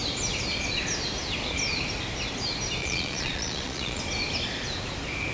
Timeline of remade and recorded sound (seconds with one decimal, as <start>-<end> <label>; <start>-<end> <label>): 0.0-2.8 recorded; 2.8-4.0 remade; 4.0-5.3 recorded